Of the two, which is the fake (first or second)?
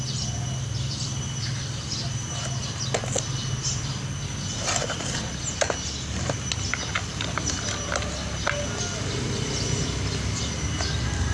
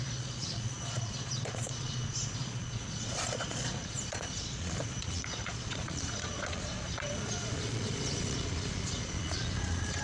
second